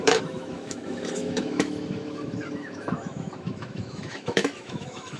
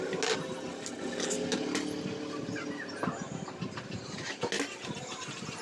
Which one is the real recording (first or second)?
second